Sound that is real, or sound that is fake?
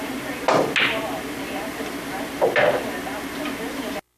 real